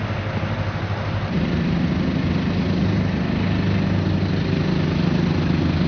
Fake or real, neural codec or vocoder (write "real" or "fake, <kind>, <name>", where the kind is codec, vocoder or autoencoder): real